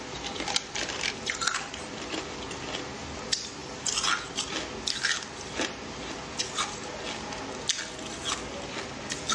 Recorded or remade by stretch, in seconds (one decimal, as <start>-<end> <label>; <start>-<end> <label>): 0.0-9.3 recorded